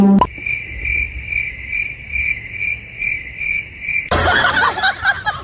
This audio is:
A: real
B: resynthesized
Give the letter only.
A